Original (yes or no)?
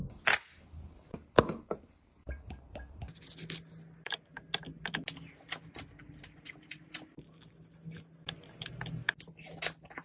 yes